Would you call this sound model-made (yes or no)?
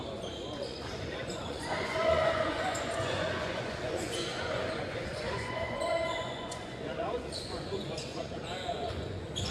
yes